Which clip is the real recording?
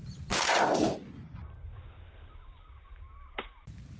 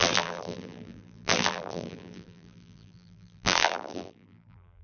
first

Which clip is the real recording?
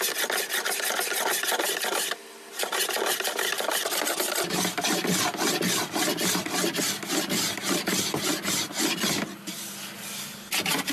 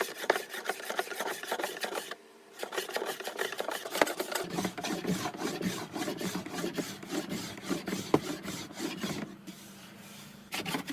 first